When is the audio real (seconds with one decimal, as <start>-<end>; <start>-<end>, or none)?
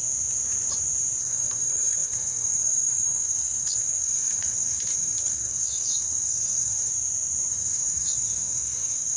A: 0.0-1.2; 6.9-7.5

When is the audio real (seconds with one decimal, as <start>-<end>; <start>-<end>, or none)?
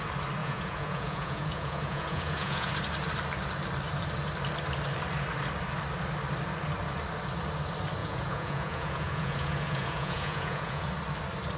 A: 0.0-0.4; 2.7-8.0; 10.9-11.6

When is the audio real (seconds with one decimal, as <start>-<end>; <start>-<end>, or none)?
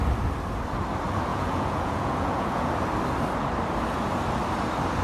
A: 0.0-1.3; 2.7-5.0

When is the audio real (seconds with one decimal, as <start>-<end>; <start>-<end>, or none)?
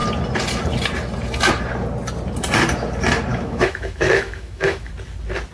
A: 0.0-3.3; 4.9-5.5